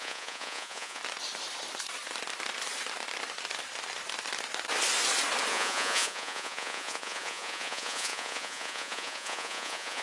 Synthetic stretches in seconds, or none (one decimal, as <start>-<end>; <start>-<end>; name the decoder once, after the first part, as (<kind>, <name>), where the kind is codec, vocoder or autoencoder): 0.0-1.0 (vocoder, Vocos); 5.5-10.0